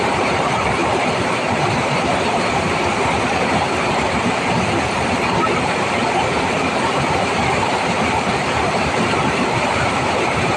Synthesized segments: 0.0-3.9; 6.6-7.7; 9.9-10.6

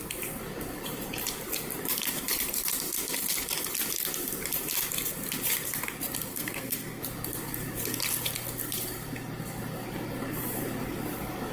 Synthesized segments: 6.3-7.0

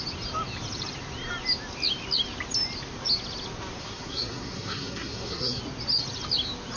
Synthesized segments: 3.8-5.6

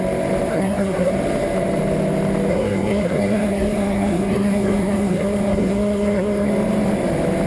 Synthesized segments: 0.5-1.1; 2.5-6.5

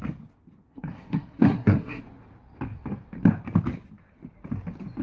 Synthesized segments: 0.7-2.0